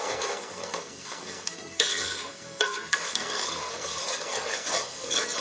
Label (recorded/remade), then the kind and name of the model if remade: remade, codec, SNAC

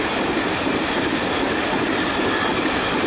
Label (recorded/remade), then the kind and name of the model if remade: recorded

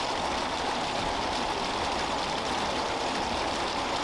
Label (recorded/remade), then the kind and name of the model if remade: recorded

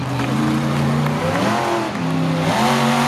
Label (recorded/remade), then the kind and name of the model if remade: recorded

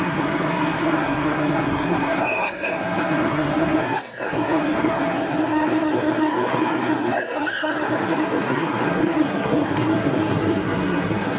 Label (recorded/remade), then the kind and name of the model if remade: remade, codec, SNAC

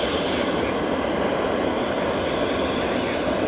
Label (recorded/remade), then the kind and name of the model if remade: recorded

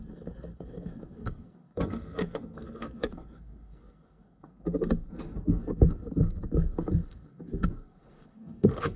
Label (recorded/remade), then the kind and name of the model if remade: remade, codec, SNAC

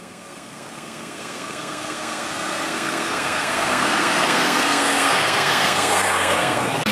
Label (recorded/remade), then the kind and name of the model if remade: remade, codec, SNAC